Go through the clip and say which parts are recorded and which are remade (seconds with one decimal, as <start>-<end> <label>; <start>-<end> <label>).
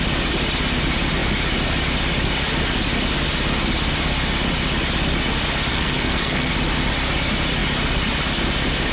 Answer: 0.0-5.7 recorded; 5.7-6.5 remade; 6.5-8.9 recorded